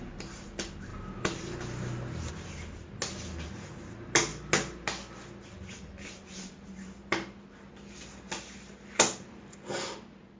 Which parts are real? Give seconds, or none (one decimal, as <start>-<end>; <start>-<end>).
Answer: 0.0-10.4